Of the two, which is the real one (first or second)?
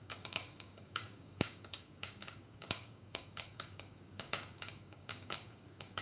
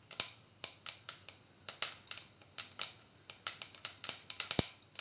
second